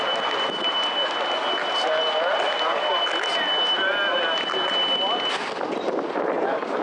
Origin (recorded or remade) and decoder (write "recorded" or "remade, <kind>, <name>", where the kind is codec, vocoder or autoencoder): recorded